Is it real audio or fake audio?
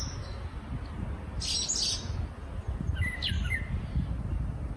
real